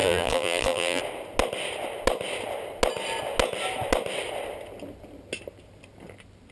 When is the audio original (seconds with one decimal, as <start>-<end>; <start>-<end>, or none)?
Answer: 1.0-6.5